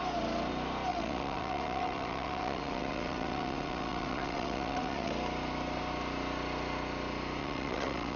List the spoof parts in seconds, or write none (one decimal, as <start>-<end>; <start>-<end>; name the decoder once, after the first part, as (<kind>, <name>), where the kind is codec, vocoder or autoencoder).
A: 0.9-5.1 (vocoder, WaveNeXt); 7.4-8.2